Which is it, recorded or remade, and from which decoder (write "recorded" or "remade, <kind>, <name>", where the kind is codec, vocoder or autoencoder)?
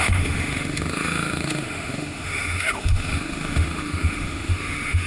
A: remade, autoencoder, DAC-VAE